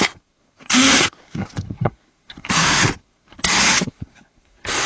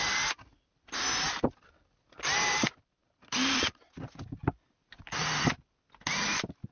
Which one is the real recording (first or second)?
second